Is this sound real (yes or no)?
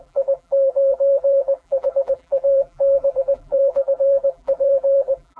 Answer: no